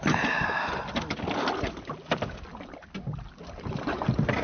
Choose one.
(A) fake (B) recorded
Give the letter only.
B